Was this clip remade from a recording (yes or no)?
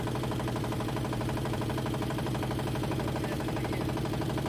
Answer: yes